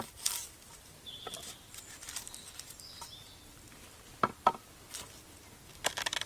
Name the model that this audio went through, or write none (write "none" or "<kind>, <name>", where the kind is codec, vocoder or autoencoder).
vocoder, BigVGAN v2